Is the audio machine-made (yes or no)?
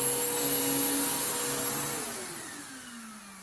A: no